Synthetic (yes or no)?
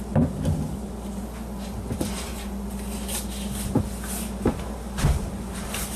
no